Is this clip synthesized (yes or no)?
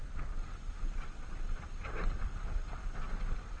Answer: yes